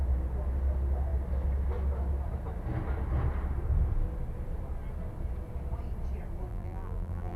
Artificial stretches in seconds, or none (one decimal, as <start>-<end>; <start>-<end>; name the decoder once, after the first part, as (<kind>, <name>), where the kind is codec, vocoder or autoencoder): 6.5-7.4 (vocoder, BigVGAN v2)